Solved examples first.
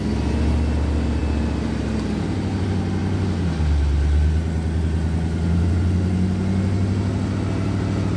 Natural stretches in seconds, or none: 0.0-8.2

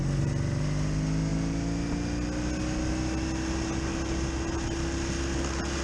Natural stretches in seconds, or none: 0.0-5.8

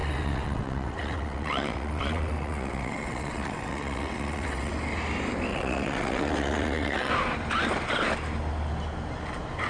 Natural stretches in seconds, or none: 4.7-5.5; 7.1-9.7

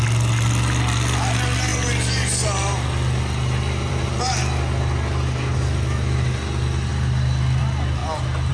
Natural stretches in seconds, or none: 0.0-8.5